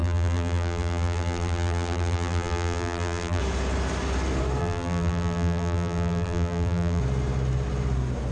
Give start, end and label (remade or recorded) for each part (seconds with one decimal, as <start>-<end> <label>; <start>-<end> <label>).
0.0-3.4 remade; 3.4-4.6 recorded; 4.6-7.0 remade; 7.0-8.3 recorded